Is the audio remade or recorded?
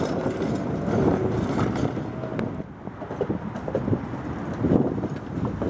recorded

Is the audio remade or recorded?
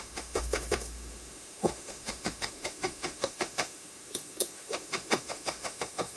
remade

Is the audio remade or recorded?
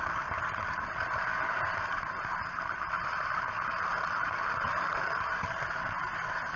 recorded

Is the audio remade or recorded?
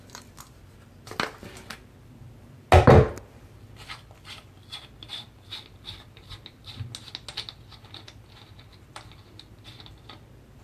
recorded